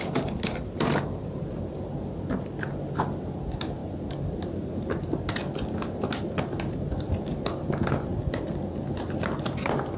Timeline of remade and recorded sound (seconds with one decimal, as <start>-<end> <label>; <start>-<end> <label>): 0.0-10.0 recorded